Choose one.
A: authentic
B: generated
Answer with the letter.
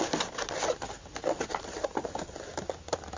A